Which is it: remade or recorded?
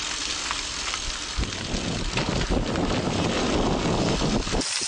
recorded